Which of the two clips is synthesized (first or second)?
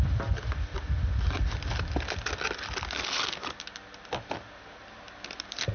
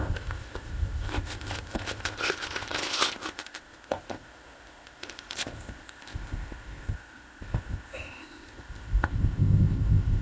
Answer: second